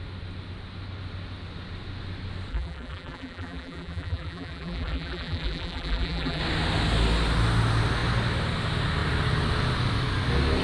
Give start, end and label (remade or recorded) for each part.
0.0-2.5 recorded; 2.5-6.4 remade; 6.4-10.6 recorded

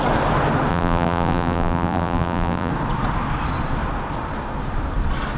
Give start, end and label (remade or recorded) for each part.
0.0-0.7 recorded; 0.7-2.7 remade; 2.7-5.4 recorded

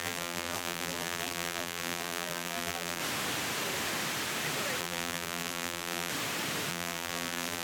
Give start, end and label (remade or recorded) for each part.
0.0-3.0 remade; 3.0-4.8 recorded; 4.8-6.1 remade; 6.1-6.7 recorded; 6.7-7.6 remade

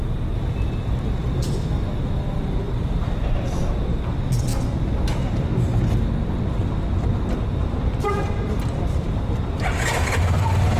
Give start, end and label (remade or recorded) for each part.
0.0-10.8 recorded

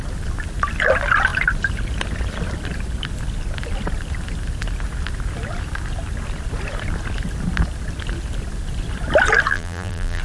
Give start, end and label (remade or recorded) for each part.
0.0-9.5 recorded; 9.5-10.2 remade

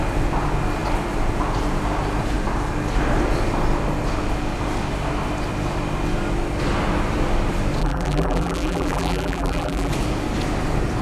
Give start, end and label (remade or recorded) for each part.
0.0-7.8 recorded; 7.8-9.9 remade; 9.9-11.0 recorded